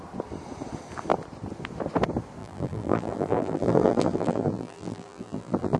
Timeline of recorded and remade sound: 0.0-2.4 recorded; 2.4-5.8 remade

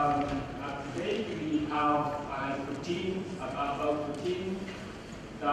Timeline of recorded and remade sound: 0.0-0.6 recorded; 0.6-3.9 remade; 3.9-5.5 recorded

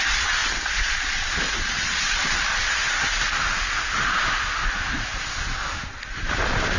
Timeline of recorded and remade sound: 0.0-2.8 remade; 2.8-6.1 recorded; 6.1-6.8 remade

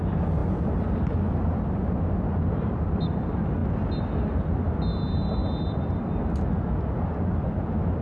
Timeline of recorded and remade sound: 0.0-8.0 recorded

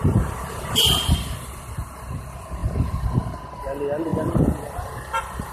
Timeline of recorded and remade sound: 0.0-5.5 recorded